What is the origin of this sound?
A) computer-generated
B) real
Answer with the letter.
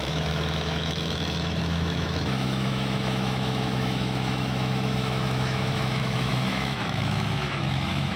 A